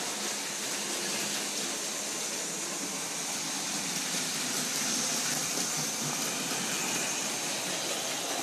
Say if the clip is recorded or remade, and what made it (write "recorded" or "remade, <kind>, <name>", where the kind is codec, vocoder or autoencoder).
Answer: recorded